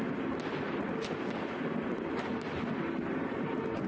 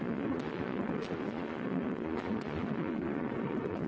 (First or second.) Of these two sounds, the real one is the first